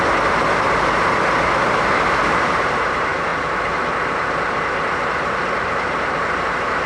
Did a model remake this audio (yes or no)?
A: no